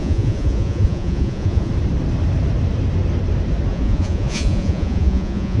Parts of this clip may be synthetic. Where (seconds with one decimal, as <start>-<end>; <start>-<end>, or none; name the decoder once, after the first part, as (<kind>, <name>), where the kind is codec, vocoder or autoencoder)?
0.0-1.7 (vocoder, Vocos); 3.7-5.6